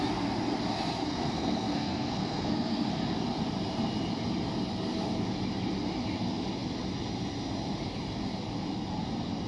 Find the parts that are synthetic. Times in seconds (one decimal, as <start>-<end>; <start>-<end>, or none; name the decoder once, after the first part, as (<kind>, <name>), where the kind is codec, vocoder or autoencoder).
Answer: 1.1-2.9 (codec, SNAC)